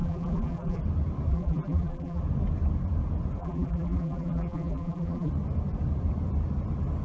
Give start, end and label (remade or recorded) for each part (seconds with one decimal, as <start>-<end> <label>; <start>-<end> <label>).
0.0-0.8 remade; 0.8-1.3 recorded; 1.3-2.2 remade; 2.2-3.4 recorded; 3.4-5.3 remade; 5.3-7.0 recorded